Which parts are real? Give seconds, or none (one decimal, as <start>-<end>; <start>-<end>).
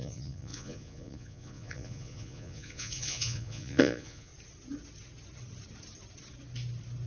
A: 4.3-7.1